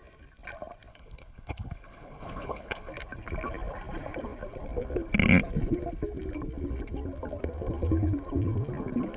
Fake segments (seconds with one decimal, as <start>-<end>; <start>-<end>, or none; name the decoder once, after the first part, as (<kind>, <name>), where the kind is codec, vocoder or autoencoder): 0.9-2.9 (codec, HILCodec)

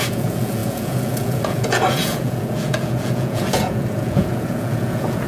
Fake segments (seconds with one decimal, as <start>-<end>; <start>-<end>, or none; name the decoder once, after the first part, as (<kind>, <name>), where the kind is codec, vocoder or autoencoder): 0.0-5.3 (vocoder, Vocos)

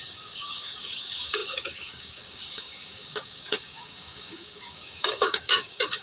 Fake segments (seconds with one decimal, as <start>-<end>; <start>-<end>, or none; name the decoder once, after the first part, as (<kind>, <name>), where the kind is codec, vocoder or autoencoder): 0.0-6.0 (codec, DAC)

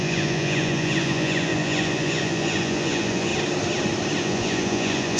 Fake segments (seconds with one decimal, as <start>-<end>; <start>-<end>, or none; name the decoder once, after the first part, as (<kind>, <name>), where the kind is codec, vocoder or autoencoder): 0.0-3.3 (vocoder, Vocos); 4.2-5.2

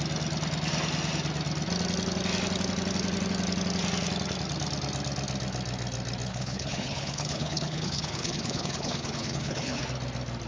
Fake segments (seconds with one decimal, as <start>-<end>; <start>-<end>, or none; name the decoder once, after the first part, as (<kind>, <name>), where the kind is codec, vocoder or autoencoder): 6.3-9.8 (codec, HILCodec)

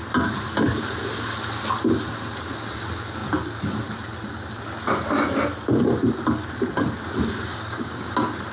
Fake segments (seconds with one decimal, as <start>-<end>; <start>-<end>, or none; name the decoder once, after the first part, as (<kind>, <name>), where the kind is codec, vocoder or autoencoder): 7.5-8.1 (codec, DAC)